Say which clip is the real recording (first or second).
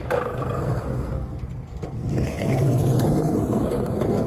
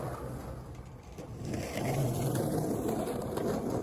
second